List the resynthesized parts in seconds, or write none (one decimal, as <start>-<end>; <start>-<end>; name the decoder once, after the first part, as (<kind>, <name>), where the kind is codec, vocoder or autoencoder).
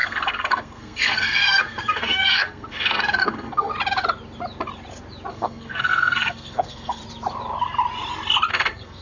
0.0-3.7 (codec, SNAC); 5.3-7.0; 8.5-9.0